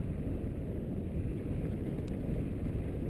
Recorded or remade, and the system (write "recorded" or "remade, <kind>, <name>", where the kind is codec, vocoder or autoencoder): recorded